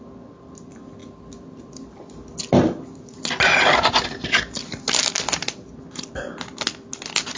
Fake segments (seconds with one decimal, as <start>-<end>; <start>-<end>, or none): none